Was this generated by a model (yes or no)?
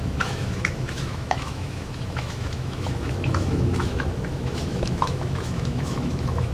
yes